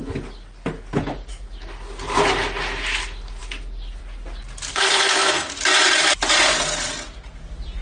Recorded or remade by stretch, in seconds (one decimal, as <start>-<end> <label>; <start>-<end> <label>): 0.0-4.7 recorded; 4.7-5.5 remade; 5.5-7.8 recorded